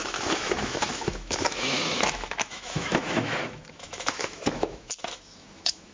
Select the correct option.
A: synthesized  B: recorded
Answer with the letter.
A